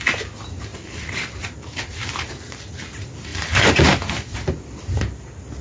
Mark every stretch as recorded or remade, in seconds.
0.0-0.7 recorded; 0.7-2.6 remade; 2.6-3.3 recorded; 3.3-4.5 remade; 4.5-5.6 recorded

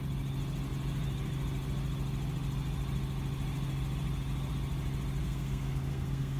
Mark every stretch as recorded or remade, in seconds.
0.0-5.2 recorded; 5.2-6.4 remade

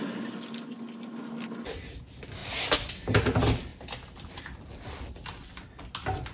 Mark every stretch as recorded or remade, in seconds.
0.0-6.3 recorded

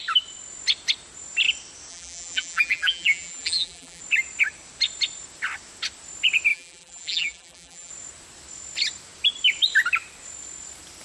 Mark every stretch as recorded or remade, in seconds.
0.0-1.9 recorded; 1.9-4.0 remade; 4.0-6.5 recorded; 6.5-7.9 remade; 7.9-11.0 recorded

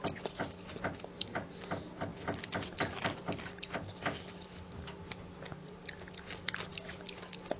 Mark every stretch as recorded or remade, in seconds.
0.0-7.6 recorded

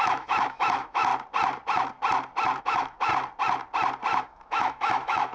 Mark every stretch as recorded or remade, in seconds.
0.0-1.1 remade; 1.1-2.6 recorded; 2.6-3.1 remade; 3.1-4.2 recorded; 4.2-5.3 remade

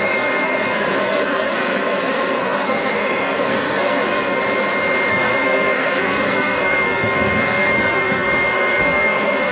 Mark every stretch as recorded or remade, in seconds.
0.0-4.4 remade; 4.4-5.1 recorded; 5.1-9.5 remade